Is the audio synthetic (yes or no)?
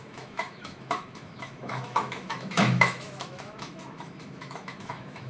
yes